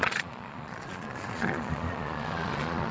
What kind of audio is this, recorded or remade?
remade